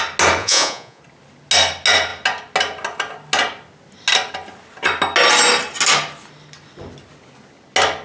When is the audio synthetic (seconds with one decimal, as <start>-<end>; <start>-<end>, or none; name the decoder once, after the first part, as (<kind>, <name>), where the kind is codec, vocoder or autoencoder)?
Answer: 0.4-1.0 (vocoder, Vocos)